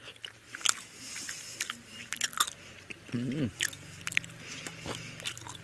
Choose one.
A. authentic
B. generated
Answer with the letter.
A